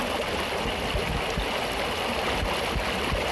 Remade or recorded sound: recorded